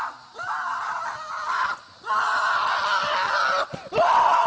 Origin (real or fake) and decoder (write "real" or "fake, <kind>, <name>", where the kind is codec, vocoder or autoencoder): real